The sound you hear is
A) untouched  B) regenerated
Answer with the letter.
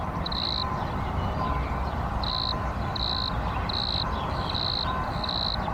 B